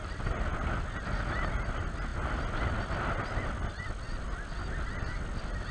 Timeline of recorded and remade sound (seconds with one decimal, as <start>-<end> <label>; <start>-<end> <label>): 0.0-5.7 recorded